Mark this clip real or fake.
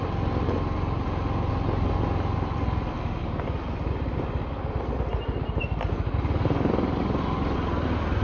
real